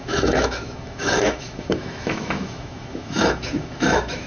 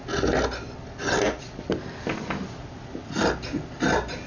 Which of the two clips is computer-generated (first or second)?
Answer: first